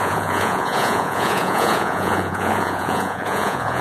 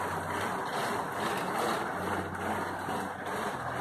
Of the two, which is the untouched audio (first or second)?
second